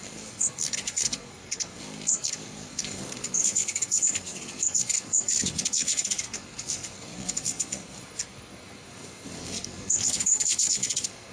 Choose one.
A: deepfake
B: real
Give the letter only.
A